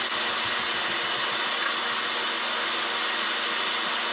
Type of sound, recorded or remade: recorded